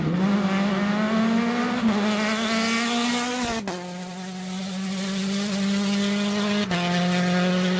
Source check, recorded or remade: recorded